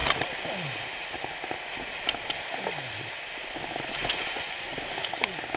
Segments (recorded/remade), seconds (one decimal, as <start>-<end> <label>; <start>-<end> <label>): 0.0-4.0 recorded; 4.0-4.7 remade; 4.7-5.6 recorded